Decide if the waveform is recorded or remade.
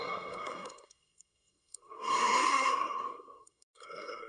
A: remade